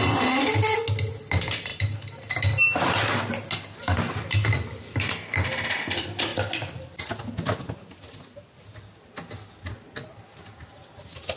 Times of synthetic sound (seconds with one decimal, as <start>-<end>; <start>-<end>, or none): none